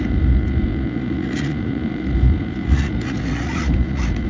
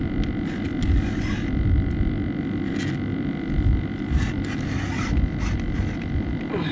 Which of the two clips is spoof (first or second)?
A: first